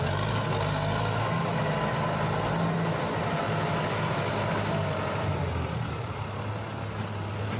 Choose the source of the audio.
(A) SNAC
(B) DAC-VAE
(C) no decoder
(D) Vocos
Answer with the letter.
C